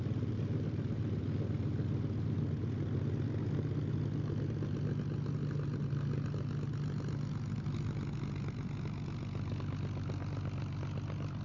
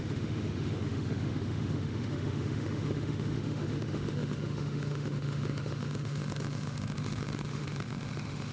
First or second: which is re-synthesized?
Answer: second